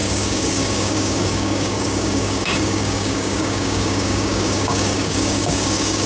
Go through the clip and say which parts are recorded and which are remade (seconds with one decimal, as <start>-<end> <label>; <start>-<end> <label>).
0.0-6.1 remade